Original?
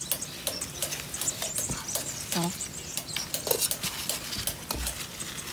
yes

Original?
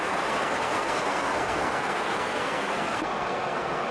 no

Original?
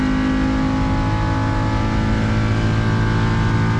yes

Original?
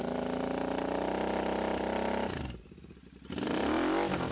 yes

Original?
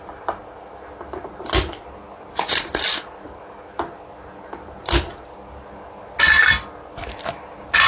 yes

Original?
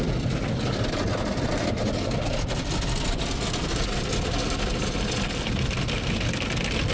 yes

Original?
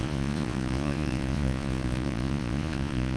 no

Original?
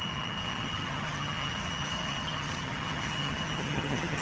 no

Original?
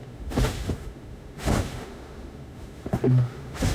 no